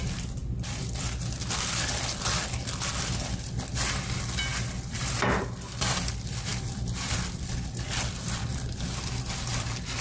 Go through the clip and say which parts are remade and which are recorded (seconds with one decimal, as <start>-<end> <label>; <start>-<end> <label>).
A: 0.0-10.0 recorded